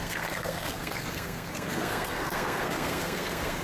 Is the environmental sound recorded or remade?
remade